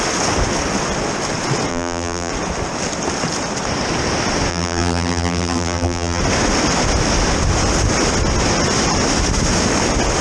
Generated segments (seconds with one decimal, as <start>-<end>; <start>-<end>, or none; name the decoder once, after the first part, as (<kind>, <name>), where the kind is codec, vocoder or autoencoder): 1.7-2.3 (vocoder, BigVGAN v2); 4.5-6.2